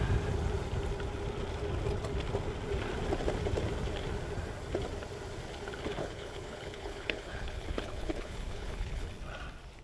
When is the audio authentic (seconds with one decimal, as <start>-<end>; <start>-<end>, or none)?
0.0-6.0; 9.1-9.8